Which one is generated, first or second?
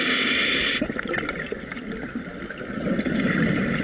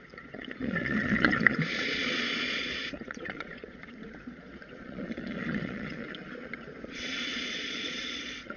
second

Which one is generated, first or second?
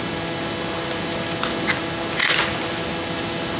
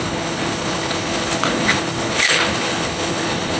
second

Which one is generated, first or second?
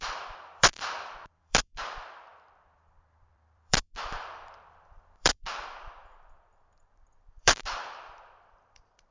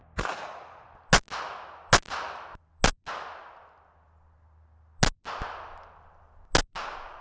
first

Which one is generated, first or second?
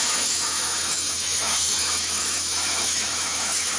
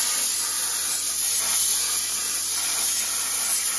first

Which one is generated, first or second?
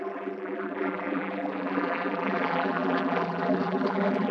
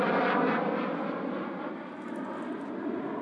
first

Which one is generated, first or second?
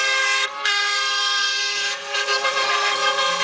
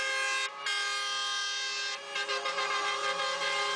first